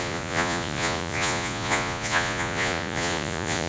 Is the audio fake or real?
fake